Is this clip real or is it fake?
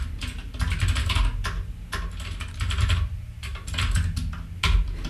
real